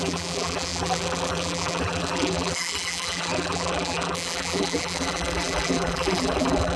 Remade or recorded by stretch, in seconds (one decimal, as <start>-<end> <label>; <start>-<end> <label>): 0.0-6.8 remade